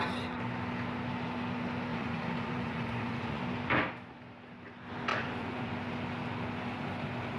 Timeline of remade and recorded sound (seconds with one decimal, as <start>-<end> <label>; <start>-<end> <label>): 0.0-1.9 recorded; 1.9-3.4 remade; 3.4-5.1 recorded; 5.1-5.7 remade; 5.7-7.4 recorded